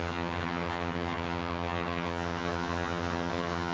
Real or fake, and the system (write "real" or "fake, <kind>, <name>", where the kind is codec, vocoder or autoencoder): fake, vocoder, HiFi-GAN